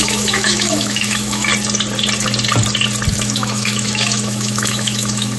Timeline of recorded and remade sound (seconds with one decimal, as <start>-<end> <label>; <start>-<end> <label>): 0.0-1.5 remade; 1.5-3.1 recorded; 3.1-5.4 remade